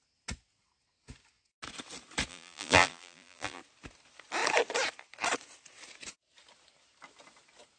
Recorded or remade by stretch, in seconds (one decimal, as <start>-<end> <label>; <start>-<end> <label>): 0.0-2.3 recorded; 2.3-3.6 remade; 3.6-7.8 recorded